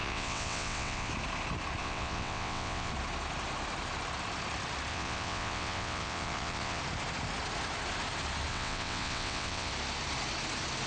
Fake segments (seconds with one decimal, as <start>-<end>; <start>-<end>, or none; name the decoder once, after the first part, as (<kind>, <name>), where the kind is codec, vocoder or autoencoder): 0.0-1.1 (vocoder, WaveNeXt); 1.8-2.9; 4.9-6.8; 8.5-9.7